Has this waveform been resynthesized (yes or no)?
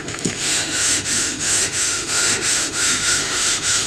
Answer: yes